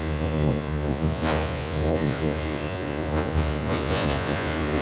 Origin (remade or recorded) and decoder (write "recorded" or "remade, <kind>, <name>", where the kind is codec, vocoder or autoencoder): remade, vocoder, Vocos